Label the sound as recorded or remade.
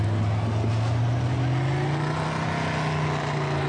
recorded